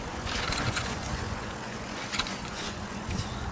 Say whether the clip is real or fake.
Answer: fake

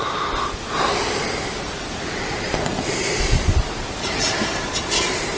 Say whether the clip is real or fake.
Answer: real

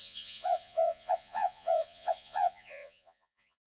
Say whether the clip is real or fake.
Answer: fake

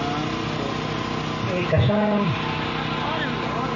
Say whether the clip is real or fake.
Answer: real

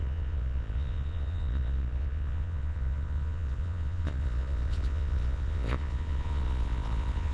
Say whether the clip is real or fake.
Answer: fake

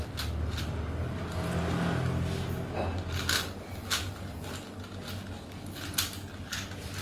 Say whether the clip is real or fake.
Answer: real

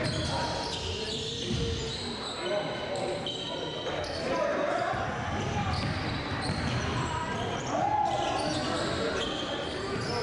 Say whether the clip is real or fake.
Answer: real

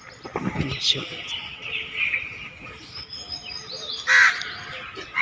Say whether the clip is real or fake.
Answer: real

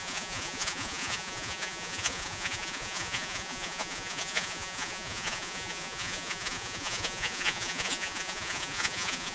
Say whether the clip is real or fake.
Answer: fake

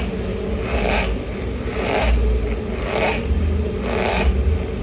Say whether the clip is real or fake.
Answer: real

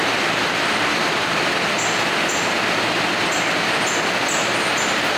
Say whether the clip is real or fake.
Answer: real